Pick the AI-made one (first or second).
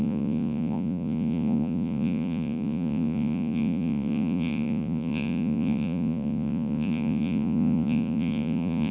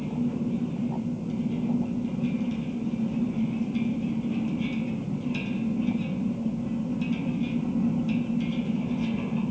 first